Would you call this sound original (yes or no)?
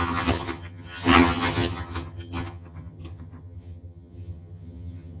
no